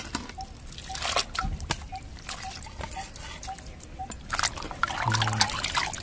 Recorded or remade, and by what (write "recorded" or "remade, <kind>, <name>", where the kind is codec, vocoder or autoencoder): recorded